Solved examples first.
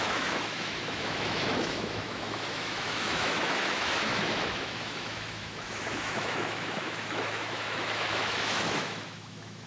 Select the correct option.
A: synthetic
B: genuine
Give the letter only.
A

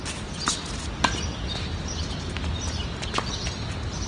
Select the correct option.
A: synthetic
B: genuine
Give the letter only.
B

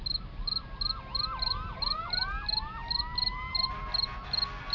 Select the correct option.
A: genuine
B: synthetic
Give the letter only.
A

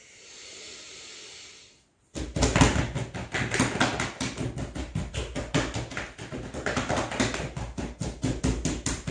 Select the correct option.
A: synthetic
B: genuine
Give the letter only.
B